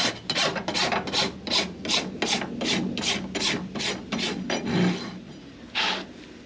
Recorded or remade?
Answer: recorded